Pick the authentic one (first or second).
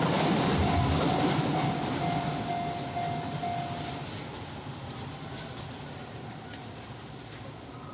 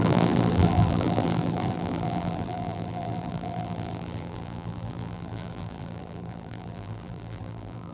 first